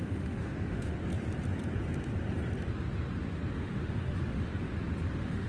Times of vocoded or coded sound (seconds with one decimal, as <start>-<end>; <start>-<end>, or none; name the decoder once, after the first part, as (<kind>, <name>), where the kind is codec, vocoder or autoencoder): 0.0-1.0 (autoencoder, DAC-VAE); 3.5-4.5; 5.1-5.5